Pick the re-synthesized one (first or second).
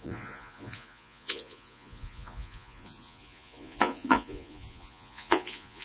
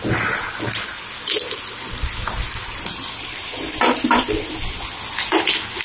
first